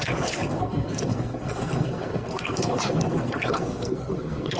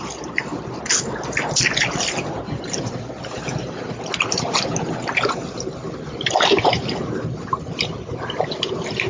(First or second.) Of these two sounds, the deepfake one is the first